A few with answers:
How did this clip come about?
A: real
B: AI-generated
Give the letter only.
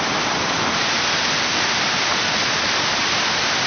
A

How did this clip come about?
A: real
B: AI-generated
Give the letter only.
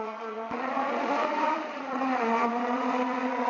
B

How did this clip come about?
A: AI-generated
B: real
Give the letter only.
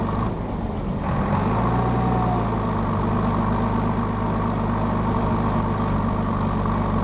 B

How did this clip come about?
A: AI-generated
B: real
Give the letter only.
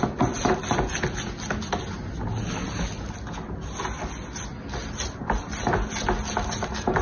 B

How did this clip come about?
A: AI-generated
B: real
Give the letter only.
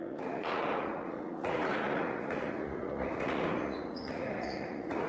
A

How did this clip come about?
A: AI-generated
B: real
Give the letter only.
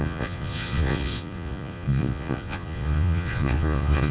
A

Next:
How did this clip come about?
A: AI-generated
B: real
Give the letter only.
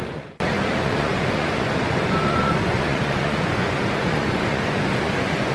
A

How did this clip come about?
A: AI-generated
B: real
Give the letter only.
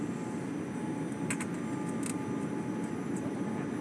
B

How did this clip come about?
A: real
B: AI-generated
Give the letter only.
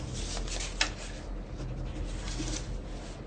A